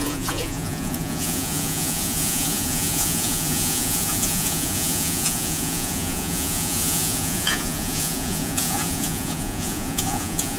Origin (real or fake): fake